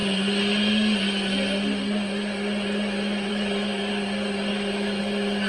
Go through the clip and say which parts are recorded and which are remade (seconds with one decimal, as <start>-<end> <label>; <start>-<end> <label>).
0.0-4.5 recorded; 4.5-5.0 remade; 5.0-5.5 recorded